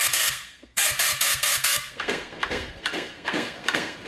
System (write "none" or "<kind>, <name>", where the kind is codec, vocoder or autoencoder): codec, SNAC